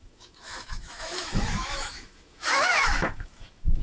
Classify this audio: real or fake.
fake